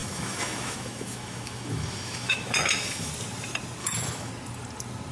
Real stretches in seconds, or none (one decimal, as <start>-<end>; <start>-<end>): 3.1-3.8; 4.3-5.1